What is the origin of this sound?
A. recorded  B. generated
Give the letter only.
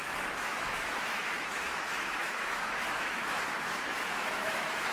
B